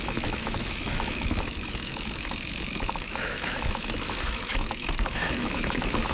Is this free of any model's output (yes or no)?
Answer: no